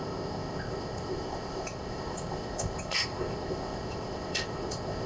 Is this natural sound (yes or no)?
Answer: no